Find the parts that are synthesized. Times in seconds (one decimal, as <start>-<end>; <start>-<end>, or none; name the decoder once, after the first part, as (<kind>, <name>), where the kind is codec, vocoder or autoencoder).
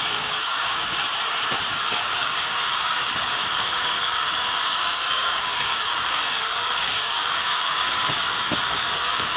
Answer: 0.0-1.0 (codec, DAC); 1.7-9.4